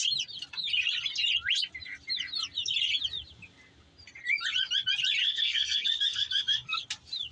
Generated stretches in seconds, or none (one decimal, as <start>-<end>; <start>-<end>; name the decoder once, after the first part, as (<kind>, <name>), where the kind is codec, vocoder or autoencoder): 5.2-6.8 (codec, SNAC)